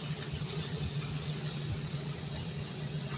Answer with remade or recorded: remade